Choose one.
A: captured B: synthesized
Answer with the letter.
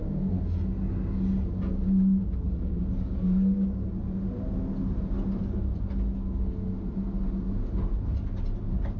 A